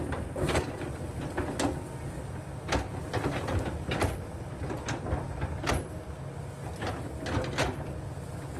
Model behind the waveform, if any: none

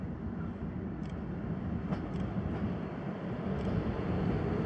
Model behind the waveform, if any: none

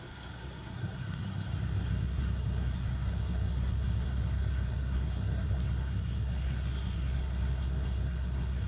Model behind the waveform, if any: codec, SNAC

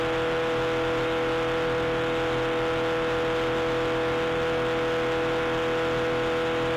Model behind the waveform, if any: none